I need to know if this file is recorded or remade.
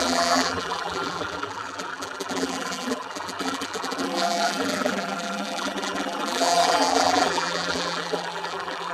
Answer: remade